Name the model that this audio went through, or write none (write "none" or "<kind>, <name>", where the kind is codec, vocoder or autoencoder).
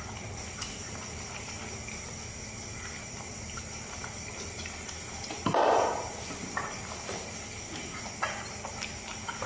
none